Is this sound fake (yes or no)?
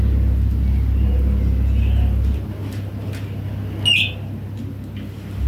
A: no